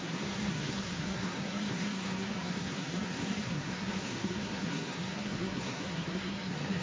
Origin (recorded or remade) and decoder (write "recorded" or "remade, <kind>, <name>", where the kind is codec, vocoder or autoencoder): remade, codec, SNAC